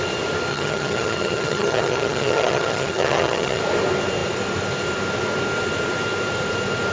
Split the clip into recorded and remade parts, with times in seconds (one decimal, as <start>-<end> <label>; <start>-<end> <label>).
0.0-0.5 recorded; 0.5-3.6 remade; 3.6-6.9 recorded

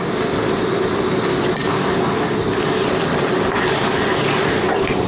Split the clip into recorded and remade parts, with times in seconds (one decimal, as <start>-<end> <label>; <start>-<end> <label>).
0.0-5.1 recorded

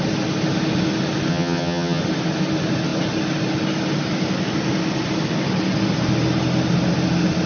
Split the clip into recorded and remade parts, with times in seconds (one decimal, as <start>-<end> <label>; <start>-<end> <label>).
0.0-1.3 recorded; 1.3-2.0 remade; 2.0-7.5 recorded

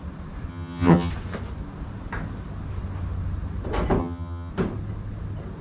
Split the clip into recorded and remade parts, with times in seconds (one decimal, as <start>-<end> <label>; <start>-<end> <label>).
0.0-0.5 recorded; 0.5-1.1 remade; 1.1-4.0 recorded; 4.0-4.5 remade; 4.5-5.6 recorded

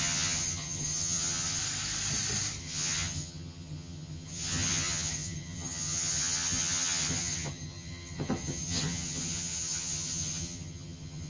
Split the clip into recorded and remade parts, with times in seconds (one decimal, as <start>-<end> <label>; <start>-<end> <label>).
0.0-1.6 remade; 1.6-2.6 recorded; 2.6-11.3 remade

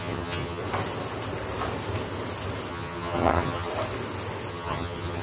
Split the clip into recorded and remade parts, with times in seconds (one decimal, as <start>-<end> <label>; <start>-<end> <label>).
0.0-0.6 remade; 0.6-2.7 recorded; 2.7-3.7 remade; 3.7-4.5 recorded; 4.5-5.2 remade

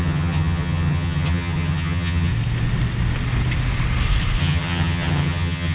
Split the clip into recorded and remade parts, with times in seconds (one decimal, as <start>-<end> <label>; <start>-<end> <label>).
0.0-2.3 remade; 2.3-4.4 recorded; 4.4-5.7 remade

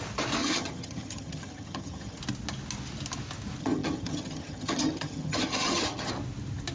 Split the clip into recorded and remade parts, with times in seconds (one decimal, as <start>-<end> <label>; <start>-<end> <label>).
0.0-0.4 recorded; 0.4-2.2 remade; 2.2-3.6 recorded; 3.6-6.1 remade; 6.1-6.7 recorded